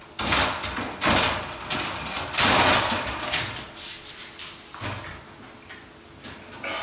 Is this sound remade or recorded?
recorded